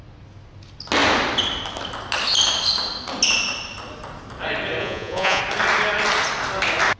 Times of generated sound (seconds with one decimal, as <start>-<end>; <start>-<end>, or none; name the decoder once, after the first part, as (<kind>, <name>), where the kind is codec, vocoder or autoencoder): 4.8-5.4 (vocoder, Vocos)